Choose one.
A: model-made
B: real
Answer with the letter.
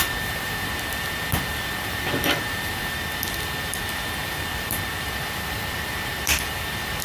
A